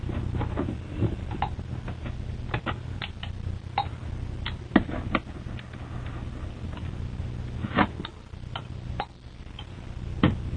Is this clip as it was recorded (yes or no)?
yes